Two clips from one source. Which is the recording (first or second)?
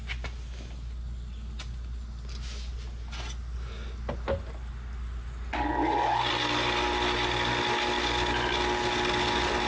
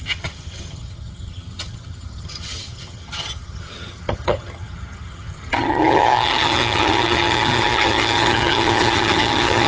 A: first